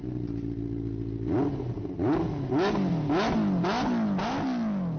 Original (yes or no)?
yes